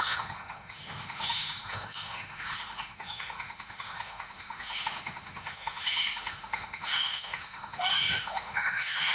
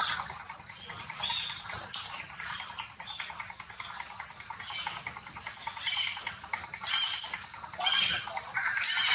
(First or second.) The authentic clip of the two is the second